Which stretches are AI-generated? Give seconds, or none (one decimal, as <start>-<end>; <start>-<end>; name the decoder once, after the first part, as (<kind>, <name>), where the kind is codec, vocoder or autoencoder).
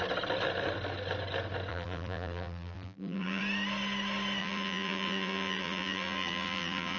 1.7-3.4 (vocoder, BigVGAN v2); 4.4-7.0